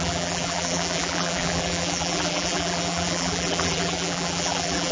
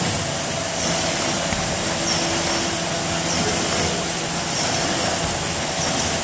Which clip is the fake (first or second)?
first